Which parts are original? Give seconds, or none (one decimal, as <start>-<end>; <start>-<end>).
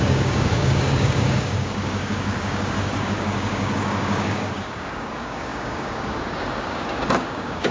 none